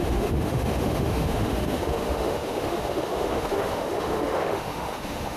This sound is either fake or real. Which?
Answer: fake